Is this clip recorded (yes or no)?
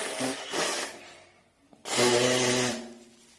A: yes